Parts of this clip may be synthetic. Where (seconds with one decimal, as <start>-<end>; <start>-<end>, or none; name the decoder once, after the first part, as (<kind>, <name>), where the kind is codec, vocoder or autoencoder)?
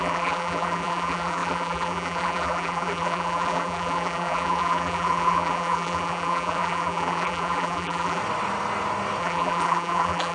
0.0-8.2 (vocoder, BigVGAN v2); 9.2-10.3